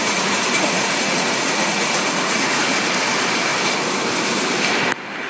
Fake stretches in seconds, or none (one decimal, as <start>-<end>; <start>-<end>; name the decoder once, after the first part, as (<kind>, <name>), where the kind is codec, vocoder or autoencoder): 0.0-2.6 (vocoder, Vocos)